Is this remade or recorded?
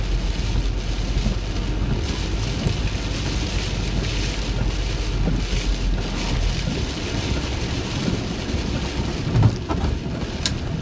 recorded